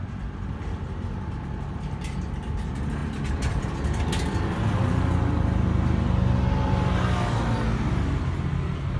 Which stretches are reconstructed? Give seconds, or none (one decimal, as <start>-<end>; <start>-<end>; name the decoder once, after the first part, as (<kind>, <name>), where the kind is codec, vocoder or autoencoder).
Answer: none